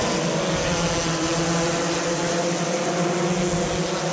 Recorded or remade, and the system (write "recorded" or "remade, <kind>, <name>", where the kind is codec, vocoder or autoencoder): recorded